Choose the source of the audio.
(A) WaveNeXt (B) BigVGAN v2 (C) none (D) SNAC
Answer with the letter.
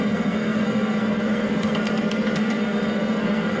D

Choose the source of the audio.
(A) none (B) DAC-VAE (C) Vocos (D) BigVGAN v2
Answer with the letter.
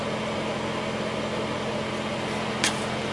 A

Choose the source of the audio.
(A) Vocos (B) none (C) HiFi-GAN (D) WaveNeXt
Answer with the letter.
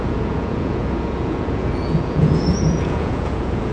A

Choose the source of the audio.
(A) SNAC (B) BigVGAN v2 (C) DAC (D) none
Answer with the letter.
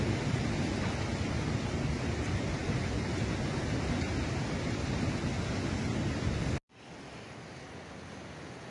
D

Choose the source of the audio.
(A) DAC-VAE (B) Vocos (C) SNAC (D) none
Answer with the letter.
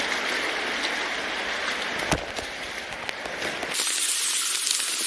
D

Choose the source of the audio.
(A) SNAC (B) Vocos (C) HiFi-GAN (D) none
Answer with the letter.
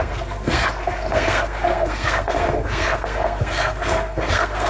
A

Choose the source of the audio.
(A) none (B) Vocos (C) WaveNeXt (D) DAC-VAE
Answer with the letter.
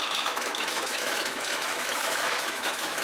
D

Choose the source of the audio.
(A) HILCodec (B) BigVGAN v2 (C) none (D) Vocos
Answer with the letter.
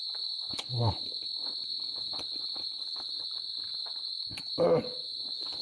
C